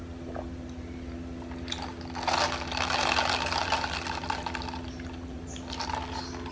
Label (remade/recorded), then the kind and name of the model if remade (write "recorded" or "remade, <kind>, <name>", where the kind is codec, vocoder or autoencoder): recorded